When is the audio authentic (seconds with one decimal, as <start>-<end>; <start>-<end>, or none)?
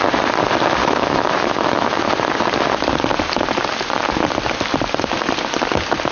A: 0.0-0.8; 2.1-6.1